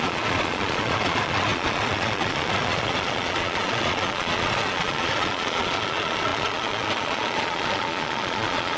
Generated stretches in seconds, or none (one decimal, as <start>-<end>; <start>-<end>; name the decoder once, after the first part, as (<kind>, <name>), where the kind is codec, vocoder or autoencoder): 0.0-8.8 (vocoder, Vocos)